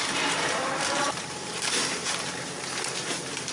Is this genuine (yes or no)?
no